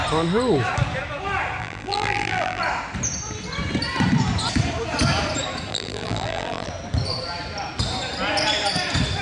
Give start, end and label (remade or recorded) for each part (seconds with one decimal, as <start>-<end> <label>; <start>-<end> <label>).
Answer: 0.0-1.6 recorded; 1.6-2.6 remade; 2.6-5.7 recorded; 5.7-6.7 remade; 6.7-9.2 recorded